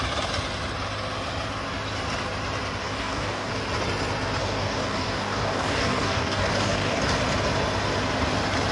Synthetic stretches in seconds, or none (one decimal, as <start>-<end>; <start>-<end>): 2.8-3.5; 4.4-7.0